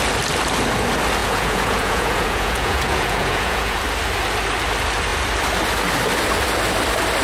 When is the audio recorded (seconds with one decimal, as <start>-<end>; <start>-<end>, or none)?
0.0-1.2; 3.8-7.2